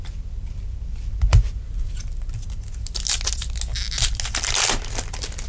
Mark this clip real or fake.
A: real